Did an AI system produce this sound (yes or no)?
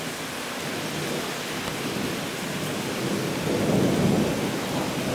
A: no